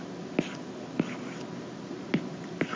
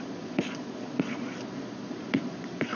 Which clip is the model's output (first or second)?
second